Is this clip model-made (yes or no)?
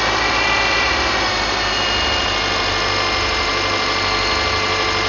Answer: no